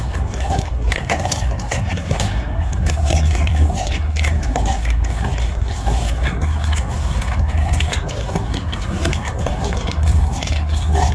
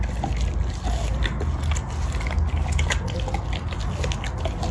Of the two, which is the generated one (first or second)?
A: first